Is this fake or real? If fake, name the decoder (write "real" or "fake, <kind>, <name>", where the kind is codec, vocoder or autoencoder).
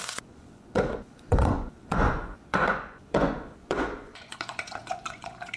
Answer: fake, vocoder, Vocos